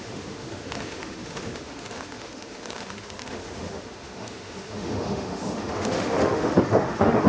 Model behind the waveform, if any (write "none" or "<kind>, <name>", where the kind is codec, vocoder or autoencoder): autoencoder, DAC-VAE